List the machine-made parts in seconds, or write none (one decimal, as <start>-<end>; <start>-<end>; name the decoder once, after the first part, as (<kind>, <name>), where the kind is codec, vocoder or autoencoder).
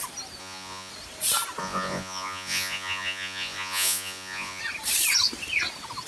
0.4-0.9 (vocoder, Vocos); 1.6-4.6